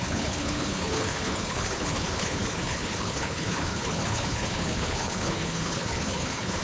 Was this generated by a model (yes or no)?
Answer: yes